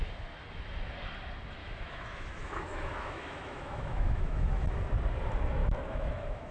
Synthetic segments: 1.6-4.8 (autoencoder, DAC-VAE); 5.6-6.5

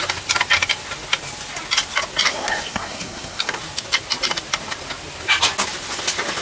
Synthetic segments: 2.3-3.6 (codec, SNAC)

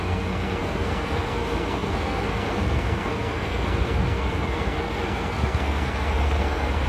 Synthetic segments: 0.0-6.9 (codec, SNAC)

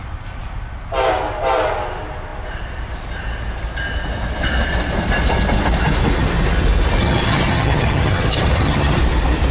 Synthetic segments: 7.0-9.0 (vocoder, HiFi-GAN)

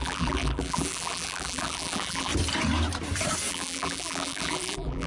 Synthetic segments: 0.0-2.3 (vocoder, BigVGAN v2); 3.5-5.1